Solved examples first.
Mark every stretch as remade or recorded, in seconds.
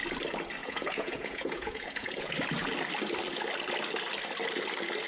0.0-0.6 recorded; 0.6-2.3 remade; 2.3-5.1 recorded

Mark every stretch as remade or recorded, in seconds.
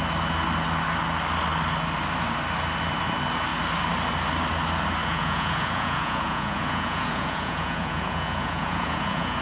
0.0-5.0 recorded; 5.0-9.4 remade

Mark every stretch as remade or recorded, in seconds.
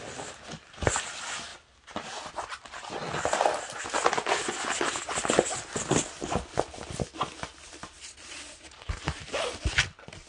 0.0-10.3 recorded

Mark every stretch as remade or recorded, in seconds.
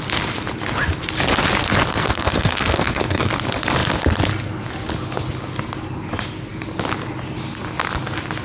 0.0-1.9 recorded; 1.9-3.3 remade; 3.3-8.4 recorded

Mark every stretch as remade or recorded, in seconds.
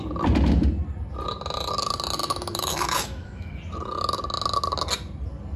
0.0-2.2 recorded; 2.2-3.6 remade; 3.6-5.6 recorded